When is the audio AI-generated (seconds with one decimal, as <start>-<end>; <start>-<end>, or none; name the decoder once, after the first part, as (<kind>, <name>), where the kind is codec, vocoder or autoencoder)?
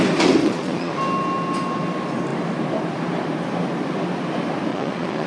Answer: 0.4-0.9 (vocoder, Vocos); 4.7-5.3